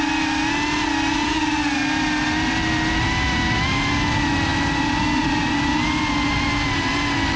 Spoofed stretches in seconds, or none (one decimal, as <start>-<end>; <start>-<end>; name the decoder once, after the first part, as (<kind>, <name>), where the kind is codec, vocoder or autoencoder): none